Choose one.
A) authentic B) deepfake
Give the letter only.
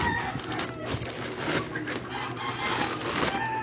A